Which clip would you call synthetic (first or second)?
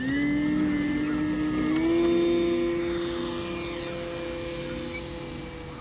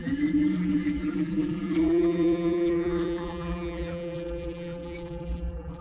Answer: second